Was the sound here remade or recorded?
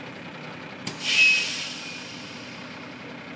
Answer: recorded